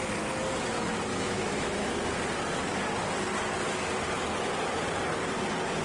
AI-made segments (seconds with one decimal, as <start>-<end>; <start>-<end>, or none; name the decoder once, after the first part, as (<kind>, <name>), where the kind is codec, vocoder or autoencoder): 1.1-2.0 (autoencoder, DAC-VAE)